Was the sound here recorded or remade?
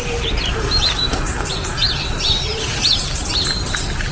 remade